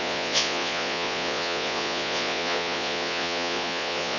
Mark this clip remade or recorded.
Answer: remade